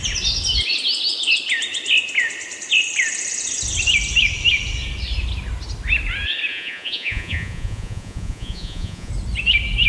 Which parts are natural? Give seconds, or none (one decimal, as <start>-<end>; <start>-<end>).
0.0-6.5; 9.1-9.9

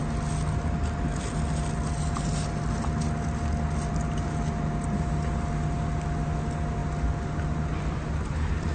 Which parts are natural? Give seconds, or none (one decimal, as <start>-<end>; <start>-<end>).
0.0-8.7

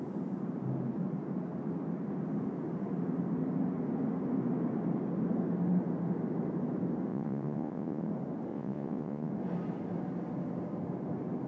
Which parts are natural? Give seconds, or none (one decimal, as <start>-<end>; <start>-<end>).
0.0-7.1; 8.1-8.5; 9.3-11.5

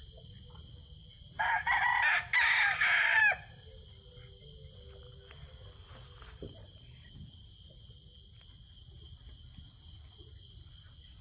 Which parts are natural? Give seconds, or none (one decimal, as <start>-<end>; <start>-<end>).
0.0-11.2

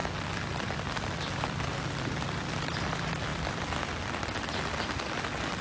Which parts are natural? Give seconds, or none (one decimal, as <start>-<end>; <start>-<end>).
0.0-5.6

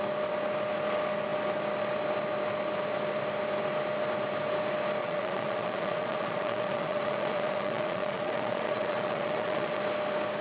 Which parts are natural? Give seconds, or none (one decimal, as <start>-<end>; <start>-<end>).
0.0-5.0; 9.8-10.4